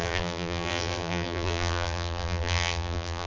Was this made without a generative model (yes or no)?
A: no